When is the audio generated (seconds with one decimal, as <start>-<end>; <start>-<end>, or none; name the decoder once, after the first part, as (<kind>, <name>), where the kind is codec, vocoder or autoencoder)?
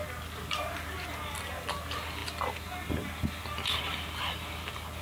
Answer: none